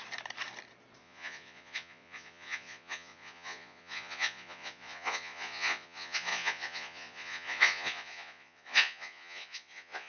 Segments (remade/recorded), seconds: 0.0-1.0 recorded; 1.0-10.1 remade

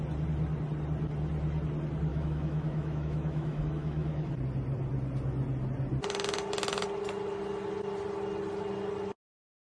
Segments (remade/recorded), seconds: 0.0-2.1 recorded; 2.1-4.3 remade; 4.3-9.7 recorded

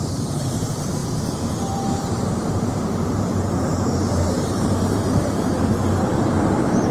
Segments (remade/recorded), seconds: 0.0-6.9 remade

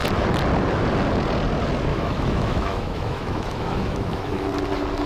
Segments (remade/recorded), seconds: 0.0-1.9 recorded; 1.9-4.5 remade; 4.5-5.1 recorded

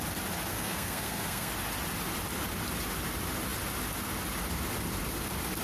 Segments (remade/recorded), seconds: 0.0-0.5 recorded; 0.5-1.5 remade; 1.5-5.6 recorded

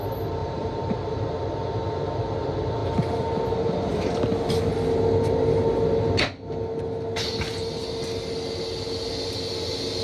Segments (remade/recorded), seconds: 0.0-0.4 recorded; 0.4-1.2 remade; 1.2-10.0 recorded